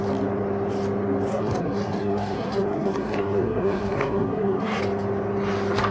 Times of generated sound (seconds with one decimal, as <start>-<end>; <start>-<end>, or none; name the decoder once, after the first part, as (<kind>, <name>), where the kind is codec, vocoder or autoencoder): 1.3-4.8 (codec, SNAC)